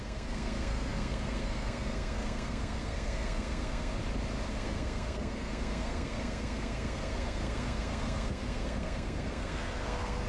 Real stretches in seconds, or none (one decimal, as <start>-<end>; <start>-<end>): 3.9-4.5